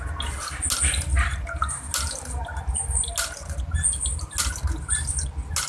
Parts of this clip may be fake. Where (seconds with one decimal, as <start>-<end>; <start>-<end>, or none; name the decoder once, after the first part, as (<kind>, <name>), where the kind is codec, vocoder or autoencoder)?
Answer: none